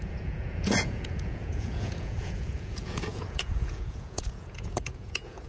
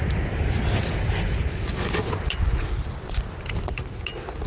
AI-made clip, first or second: first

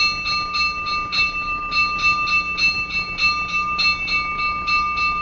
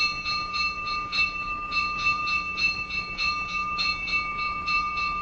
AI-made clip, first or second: second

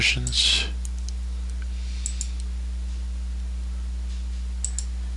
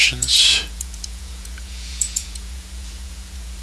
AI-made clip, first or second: second